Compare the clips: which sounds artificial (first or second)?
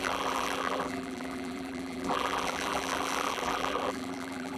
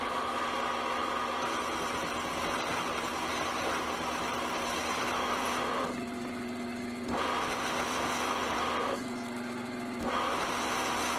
first